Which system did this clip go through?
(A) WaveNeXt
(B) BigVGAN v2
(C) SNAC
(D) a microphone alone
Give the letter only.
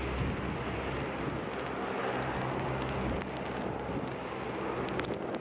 D